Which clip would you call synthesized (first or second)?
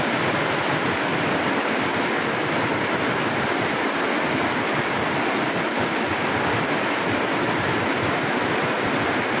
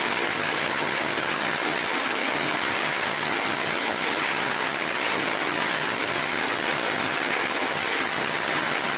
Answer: second